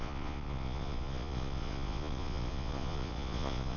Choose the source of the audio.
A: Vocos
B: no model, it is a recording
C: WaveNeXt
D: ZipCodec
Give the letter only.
A